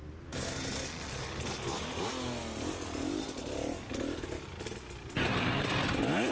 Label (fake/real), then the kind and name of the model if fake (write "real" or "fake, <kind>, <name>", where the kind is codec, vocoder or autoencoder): real